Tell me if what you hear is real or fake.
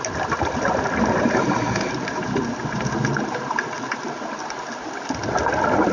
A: real